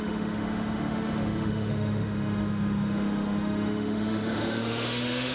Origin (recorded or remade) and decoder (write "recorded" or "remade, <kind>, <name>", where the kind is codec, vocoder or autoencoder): remade, autoencoder, DAC-VAE